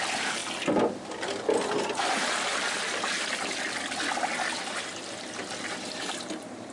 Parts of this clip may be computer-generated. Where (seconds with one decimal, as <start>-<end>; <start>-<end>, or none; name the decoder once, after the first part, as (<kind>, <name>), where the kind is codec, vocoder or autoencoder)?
0.0-0.4 (vocoder, BigVGAN v2); 2.1-2.5; 5.7-6.7